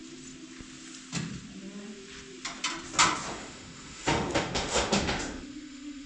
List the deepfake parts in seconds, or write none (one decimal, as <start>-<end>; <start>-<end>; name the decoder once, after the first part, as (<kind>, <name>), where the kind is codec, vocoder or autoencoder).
3.3-6.1 (autoencoder, DAC-VAE)